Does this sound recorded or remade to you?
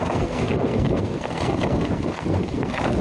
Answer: remade